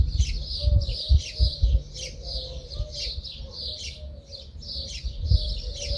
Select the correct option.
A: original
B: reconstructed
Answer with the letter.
A